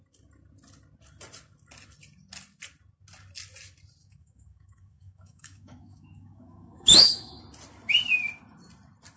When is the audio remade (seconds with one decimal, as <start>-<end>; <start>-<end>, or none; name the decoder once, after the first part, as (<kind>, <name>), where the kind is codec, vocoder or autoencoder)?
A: 4.0-7.4 (autoencoder, DAC-VAE)